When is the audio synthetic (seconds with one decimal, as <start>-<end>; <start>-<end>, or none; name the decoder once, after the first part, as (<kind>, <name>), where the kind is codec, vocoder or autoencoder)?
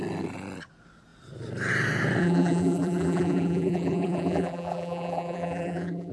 2.2-6.1 (vocoder, BigVGAN v2)